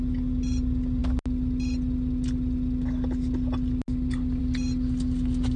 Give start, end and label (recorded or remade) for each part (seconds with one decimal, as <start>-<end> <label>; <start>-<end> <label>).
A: 0.0-5.6 recorded